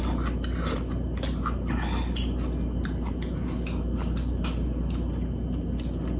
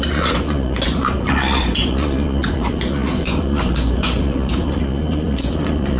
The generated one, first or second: second